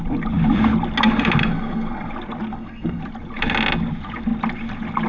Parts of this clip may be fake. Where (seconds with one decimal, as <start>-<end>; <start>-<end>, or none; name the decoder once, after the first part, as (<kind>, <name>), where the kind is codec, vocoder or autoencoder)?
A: 1.4-2.1 (codec, SNAC); 2.5-3.0